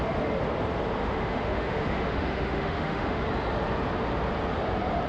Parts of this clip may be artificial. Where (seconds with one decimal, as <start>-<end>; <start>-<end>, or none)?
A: 1.0-3.2